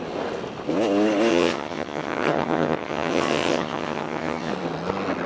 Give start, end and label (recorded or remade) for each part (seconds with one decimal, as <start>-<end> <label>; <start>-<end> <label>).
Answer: 0.0-1.3 recorded; 1.3-4.5 remade; 4.5-5.3 recorded